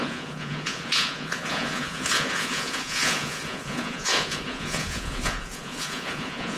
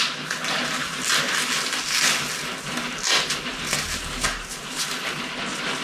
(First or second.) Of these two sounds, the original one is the second